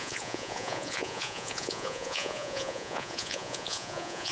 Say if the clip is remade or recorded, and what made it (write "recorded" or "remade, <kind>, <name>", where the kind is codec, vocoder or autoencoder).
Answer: remade, vocoder, Vocos